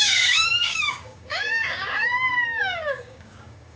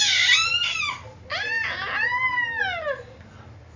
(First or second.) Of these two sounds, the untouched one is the second